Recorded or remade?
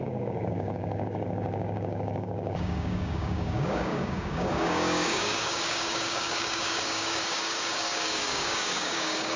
remade